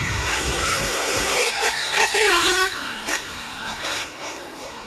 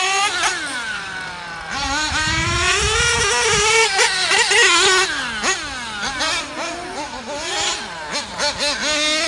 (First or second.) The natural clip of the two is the second